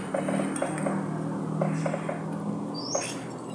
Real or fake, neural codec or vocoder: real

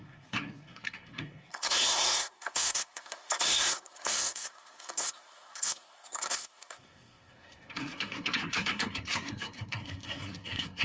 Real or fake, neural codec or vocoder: fake, codec, SNAC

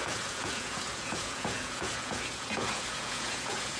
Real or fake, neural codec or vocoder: fake, vocoder, Vocos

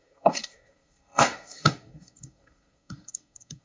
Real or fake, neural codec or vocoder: fake, codec, SNAC